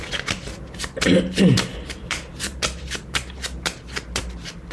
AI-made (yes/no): no